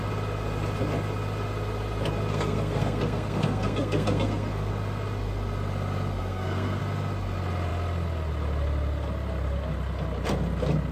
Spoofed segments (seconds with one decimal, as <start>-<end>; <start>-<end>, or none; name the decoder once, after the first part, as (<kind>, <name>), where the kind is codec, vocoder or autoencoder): 2.3-4.7 (codec, SNAC); 6.2-6.8